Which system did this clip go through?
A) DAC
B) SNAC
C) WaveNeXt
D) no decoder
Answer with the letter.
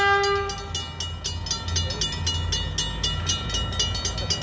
D